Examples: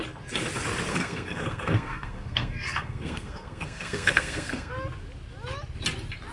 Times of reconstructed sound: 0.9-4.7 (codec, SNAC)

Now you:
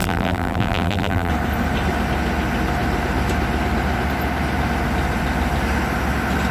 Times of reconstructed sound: 0.0-1.3 (vocoder, BigVGAN v2)

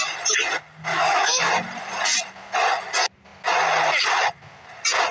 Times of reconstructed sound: 0.9-1.5 (autoencoder, DAC-VAE)

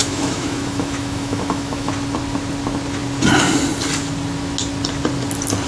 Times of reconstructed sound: 0.0-1.9 (autoencoder, DAC-VAE)

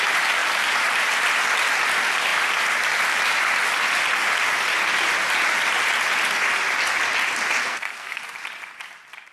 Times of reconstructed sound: 7.6-8.2 (codec, SNAC)